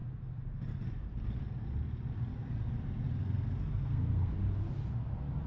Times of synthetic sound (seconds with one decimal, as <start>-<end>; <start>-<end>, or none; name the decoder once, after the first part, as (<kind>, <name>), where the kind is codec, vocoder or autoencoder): 3.2-4.3 (codec, SNAC)